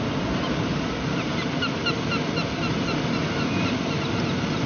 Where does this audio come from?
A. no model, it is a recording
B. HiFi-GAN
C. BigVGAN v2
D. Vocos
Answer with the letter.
A